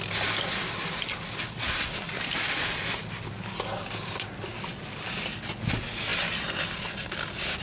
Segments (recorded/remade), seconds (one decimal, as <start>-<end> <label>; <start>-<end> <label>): 0.0-7.6 recorded